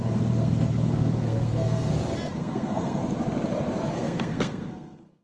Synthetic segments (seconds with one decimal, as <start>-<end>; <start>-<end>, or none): 0.0-1.9; 2.4-3.0; 3.9-5.2